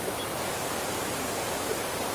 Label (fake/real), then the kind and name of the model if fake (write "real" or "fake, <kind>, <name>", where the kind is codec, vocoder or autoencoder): real